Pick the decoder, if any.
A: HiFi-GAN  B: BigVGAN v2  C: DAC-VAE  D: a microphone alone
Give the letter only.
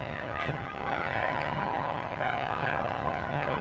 A